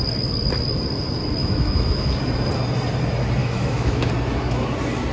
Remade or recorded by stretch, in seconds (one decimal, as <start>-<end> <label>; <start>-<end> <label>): 0.0-1.4 recorded; 1.4-2.1 remade; 2.1-3.4 recorded; 3.4-4.1 remade; 4.1-5.1 recorded

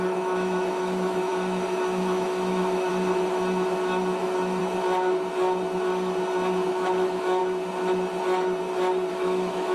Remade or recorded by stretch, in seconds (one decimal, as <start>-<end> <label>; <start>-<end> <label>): 0.0-4.6 remade; 4.6-6.7 recorded; 6.7-7.4 remade; 7.4-9.1 recorded; 9.1-9.7 remade